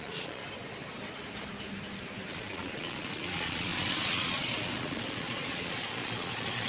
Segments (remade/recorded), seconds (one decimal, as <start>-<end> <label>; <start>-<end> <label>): 0.0-0.4 remade; 0.4-2.3 recorded; 2.3-6.7 remade